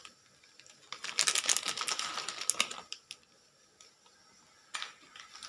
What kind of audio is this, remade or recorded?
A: recorded